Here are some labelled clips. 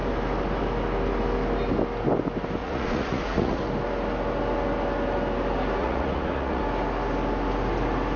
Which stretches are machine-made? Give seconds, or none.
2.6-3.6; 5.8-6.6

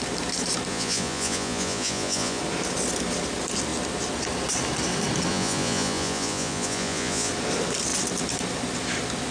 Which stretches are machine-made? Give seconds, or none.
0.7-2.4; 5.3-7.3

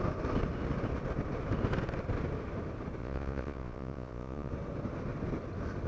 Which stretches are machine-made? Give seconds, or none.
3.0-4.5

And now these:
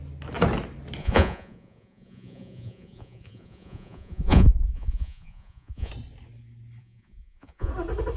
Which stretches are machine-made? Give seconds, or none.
1.0-5.9; 6.8-7.7

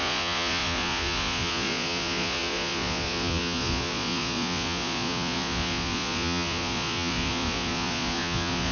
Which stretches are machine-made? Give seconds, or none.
0.0-8.7

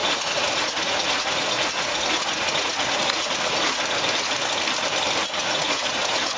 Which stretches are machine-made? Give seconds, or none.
0.0-3.8; 5.4-6.4